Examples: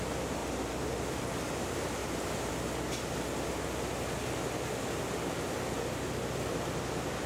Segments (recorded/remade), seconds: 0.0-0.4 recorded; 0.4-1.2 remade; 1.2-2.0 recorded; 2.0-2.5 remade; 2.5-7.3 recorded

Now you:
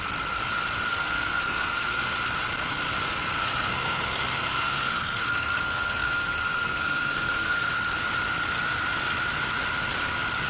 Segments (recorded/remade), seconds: 0.0-0.9 recorded; 0.9-2.0 remade; 2.0-3.4 recorded; 3.4-7.7 remade; 7.7-10.5 recorded

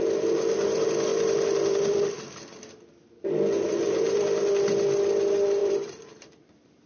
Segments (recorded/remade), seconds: 0.0-1.1 recorded; 1.1-4.5 remade; 4.5-5.6 recorded; 5.6-6.9 remade

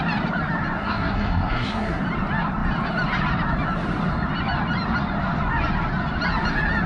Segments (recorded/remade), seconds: 0.0-0.8 recorded; 0.8-2.0 remade; 2.0-6.9 recorded

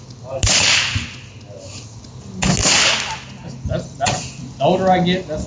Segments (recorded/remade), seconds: 0.0-5.5 recorded

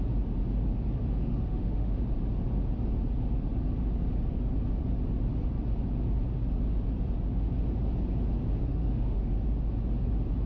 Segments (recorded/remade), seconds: 0.0-1.2 recorded; 1.2-2.0 remade; 2.0-8.7 recorded; 8.7-9.4 remade; 9.4-10.5 recorded

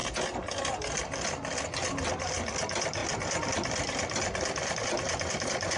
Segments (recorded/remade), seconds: 0.0-2.1 recorded; 2.1-5.8 remade